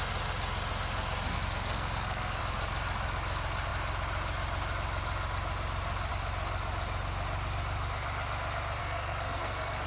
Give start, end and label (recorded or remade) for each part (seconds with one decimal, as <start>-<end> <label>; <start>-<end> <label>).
0.0-1.3 recorded; 1.3-2.4 remade; 2.4-8.8 recorded; 8.8-9.9 remade